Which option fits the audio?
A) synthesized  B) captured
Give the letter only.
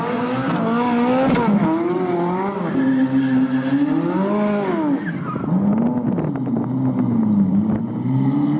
B